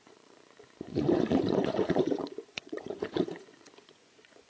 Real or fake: fake